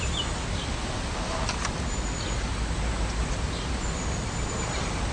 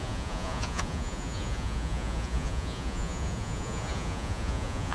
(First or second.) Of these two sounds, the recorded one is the first